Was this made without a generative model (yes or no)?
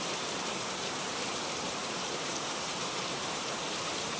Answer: no